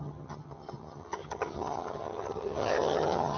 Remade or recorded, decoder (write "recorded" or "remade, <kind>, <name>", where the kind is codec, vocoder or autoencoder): remade, vocoder, HiFi-GAN